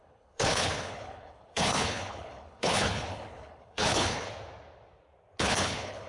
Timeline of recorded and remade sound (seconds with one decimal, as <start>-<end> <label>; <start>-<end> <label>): 0.0-4.3 remade; 4.3-5.4 recorded; 5.4-6.1 remade